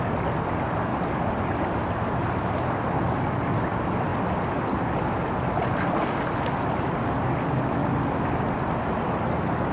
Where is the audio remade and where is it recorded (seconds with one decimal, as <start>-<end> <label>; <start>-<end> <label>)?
0.0-0.9 recorded; 0.9-2.0 remade; 2.0-9.7 recorded